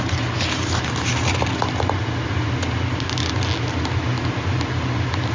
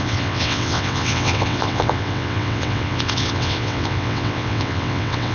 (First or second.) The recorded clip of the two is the first